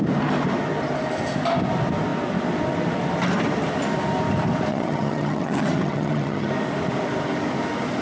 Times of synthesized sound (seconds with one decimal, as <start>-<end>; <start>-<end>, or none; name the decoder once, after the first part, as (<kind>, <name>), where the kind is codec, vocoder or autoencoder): 4.7-6.5 (vocoder, HiFi-GAN)